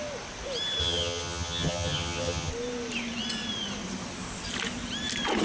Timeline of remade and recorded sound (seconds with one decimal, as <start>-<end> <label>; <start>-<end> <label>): 0.0-0.8 recorded; 0.8-2.5 remade; 2.5-5.4 recorded